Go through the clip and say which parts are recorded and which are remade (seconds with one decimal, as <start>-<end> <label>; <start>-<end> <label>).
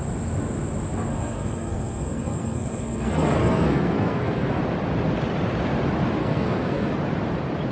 0.0-1.1 recorded; 1.1-4.6 remade; 4.6-6.2 recorded; 6.2-6.9 remade; 6.9-7.7 recorded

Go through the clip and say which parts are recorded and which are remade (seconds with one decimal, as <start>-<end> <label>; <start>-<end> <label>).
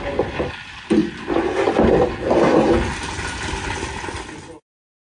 0.0-5.0 recorded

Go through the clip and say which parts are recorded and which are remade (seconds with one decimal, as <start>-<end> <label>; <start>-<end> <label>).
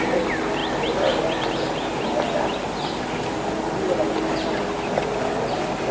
0.0-5.9 recorded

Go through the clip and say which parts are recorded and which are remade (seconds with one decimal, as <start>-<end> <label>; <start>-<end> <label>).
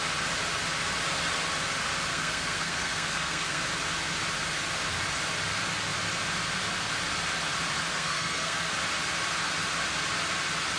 0.0-2.1 recorded; 2.1-3.6 remade; 3.6-7.9 recorded; 7.9-8.7 remade; 8.7-10.8 recorded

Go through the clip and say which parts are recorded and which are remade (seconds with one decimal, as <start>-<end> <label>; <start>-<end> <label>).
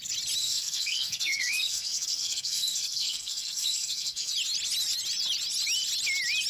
0.0-0.4 recorded; 0.4-4.3 remade; 4.3-6.5 recorded